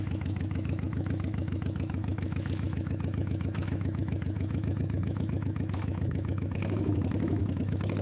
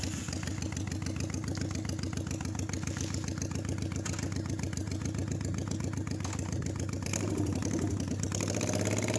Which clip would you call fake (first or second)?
first